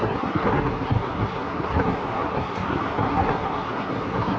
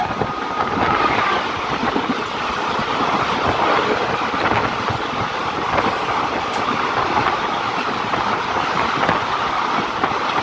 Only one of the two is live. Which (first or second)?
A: second